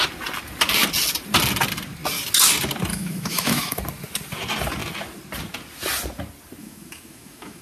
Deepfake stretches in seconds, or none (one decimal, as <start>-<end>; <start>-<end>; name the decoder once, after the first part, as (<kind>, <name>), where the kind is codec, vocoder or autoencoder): 2.9-3.8 (autoencoder, DAC-VAE); 6.6-7.6

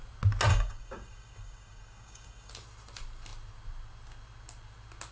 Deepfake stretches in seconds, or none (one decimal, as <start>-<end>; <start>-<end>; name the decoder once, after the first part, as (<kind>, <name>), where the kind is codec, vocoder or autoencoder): 0.5-2.5 (codec, DAC)

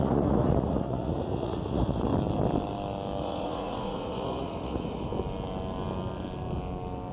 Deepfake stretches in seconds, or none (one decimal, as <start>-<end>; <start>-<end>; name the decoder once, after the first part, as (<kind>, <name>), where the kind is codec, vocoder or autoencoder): 0.0-2.1 (vocoder, Vocos); 3.2-5.1

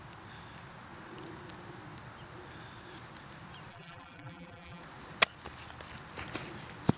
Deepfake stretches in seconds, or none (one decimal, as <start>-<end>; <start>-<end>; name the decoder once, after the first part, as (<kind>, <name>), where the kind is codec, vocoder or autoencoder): 3.7-4.8 (vocoder, BigVGAN v2)

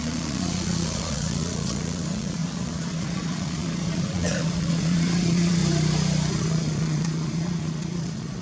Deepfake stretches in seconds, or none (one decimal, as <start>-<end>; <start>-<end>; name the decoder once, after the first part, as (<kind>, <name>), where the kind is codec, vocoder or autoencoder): 0.0-5.6 (vocoder, Vocos); 6.3-8.4

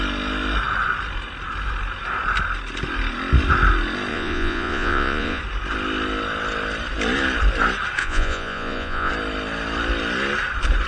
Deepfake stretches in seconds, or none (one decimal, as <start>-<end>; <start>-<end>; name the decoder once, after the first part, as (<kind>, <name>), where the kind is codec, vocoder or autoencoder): 4.1-5.4 (vocoder, Vocos); 8.0-9.1

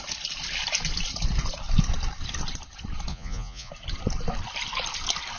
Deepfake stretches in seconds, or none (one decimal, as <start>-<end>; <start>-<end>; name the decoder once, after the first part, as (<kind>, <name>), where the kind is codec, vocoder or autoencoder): 3.1-3.7 (vocoder, Vocos)